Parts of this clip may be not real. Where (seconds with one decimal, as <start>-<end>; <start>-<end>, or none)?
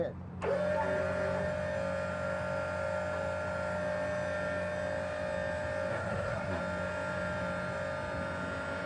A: 5.9-6.6